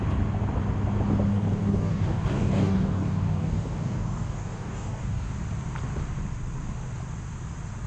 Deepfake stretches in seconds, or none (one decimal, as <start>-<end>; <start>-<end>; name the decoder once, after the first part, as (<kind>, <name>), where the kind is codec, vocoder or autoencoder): 1.3-5.3 (codec, DAC)